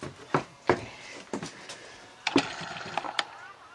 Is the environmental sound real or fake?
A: real